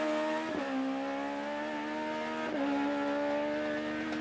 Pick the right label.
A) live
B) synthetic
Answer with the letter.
A